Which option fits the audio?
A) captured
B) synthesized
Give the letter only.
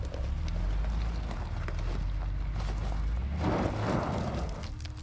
A